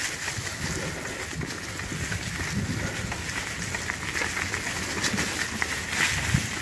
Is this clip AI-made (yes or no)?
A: no